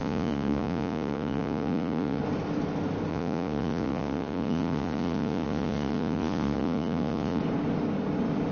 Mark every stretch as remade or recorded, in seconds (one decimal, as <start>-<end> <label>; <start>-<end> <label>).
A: 0.0-2.2 remade; 2.2-3.1 recorded; 3.1-7.4 remade; 7.4-8.5 recorded